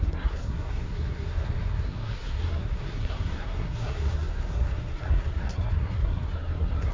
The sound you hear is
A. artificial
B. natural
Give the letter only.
A